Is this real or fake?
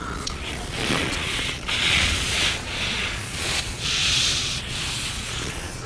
fake